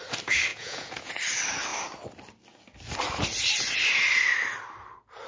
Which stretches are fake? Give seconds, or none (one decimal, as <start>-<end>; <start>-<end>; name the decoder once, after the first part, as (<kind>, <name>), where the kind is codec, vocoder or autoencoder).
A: 0.5-1.1 (vocoder, Vocos)